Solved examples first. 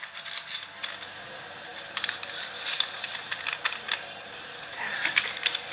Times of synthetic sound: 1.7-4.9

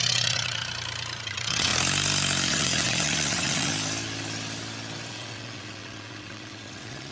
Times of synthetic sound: 0.0-0.6; 1.2-1.7; 2.5-3.7; 5.1-7.1

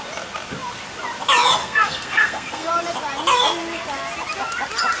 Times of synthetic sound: 1.6-2.7

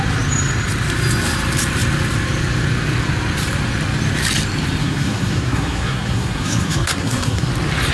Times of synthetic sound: 4.8-7.5

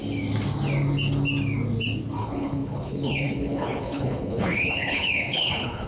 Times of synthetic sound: 2.2-5.9

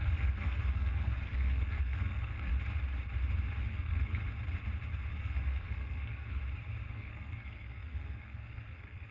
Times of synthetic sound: 0.0-2.5; 3.7-4.2; 5.2-6.4; 6.9-9.1

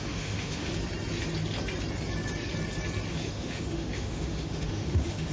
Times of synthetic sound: 0.0-0.7; 3.1-5.3